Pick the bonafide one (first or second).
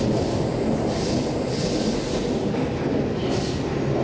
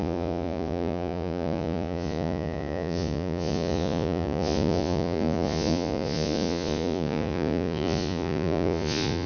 first